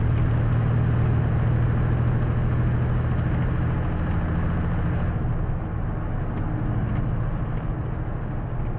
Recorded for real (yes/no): yes